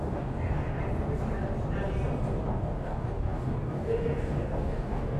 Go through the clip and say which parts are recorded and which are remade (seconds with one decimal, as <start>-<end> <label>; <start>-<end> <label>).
0.0-0.8 remade; 0.8-2.5 recorded; 2.5-5.2 remade